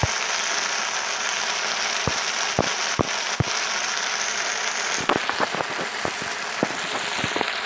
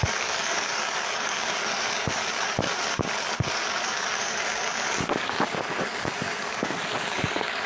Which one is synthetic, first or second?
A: second